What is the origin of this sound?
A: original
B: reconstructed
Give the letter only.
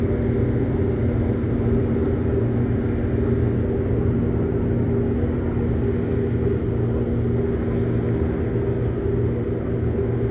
A